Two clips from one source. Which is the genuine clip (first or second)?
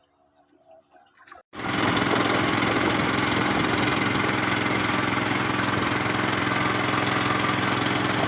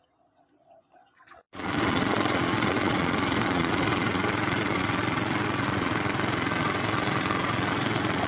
first